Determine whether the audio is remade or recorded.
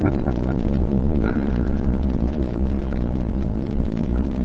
remade